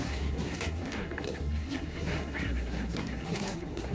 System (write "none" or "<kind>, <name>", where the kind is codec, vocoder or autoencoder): codec, SNAC